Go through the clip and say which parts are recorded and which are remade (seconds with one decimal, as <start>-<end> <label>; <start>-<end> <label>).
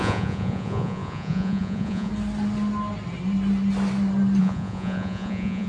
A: 0.0-2.1 remade; 2.1-4.4 recorded; 4.4-5.7 remade